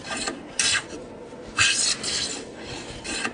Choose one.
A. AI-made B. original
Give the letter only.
A